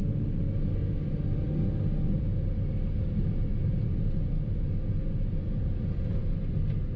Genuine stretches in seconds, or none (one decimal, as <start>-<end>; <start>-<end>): 0.0-7.0

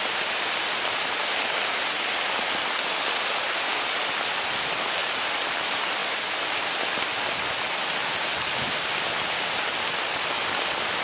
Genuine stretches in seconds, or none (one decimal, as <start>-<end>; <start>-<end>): 0.0-11.0

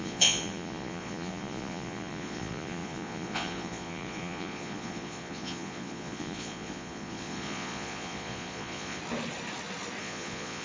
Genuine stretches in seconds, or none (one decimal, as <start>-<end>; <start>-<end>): 9.0-10.0

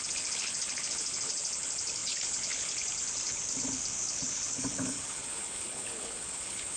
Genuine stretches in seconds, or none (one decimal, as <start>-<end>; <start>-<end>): none

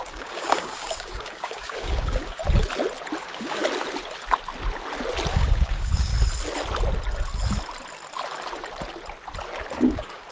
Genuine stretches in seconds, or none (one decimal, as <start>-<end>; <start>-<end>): 2.4-3.2; 3.6-5.3; 6.1-9.7

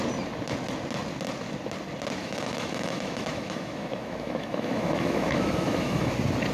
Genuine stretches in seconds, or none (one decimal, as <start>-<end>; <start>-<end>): 0.0-2.2; 6.1-6.5

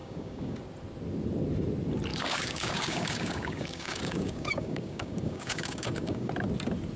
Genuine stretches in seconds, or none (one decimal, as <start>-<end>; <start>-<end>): 0.6-2.1; 6.3-7.0